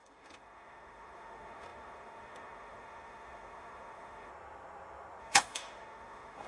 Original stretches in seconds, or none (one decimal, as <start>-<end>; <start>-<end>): 4.3-5.2